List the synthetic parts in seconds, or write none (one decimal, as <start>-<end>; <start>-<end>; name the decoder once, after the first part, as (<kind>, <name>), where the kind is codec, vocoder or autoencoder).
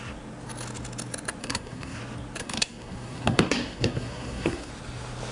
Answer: 1.4-2.0 (codec, SNAC); 2.4-4.7